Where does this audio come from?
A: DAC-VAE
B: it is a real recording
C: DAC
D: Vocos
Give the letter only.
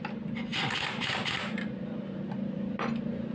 B